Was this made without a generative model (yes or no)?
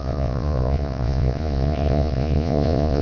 no